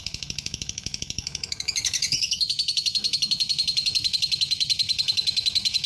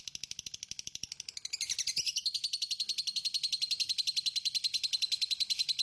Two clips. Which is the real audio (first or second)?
second